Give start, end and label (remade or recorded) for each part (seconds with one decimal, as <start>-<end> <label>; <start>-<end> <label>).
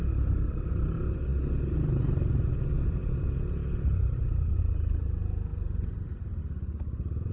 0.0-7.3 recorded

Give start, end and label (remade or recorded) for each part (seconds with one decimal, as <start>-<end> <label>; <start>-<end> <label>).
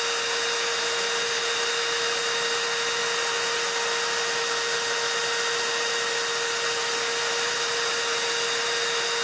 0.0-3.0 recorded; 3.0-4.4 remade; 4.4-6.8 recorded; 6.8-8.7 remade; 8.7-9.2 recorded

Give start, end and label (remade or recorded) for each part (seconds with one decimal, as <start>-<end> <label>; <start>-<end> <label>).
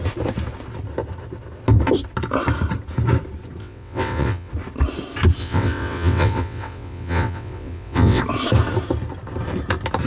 0.0-3.6 recorded; 3.6-4.5 remade; 4.5-5.4 recorded; 5.4-8.2 remade; 8.2-10.1 recorded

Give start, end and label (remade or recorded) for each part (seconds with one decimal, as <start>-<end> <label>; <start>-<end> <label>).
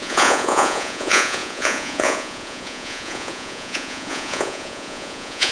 0.0-5.5 remade